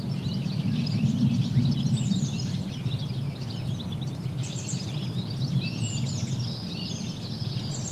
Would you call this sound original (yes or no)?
yes